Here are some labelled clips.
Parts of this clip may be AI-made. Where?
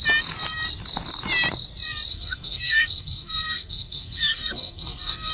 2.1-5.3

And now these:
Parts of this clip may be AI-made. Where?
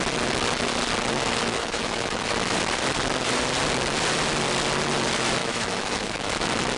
1.5-2.3; 5.4-6.3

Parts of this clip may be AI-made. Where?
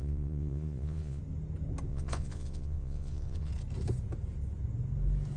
0.0-1.2; 1.9-3.5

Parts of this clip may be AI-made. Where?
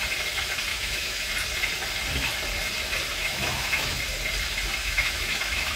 0.7-1.3; 3.1-4.0; 4.8-5.8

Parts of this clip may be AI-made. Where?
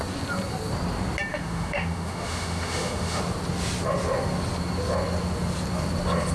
1.3-3.2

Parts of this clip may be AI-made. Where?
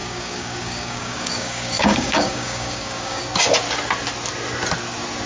0.0-3.2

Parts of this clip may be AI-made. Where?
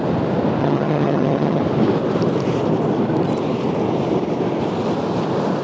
0.6-1.6